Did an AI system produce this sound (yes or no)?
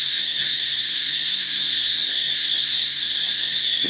yes